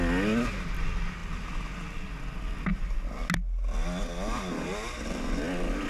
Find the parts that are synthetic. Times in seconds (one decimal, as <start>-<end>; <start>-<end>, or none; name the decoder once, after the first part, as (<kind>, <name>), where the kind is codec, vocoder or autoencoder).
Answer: none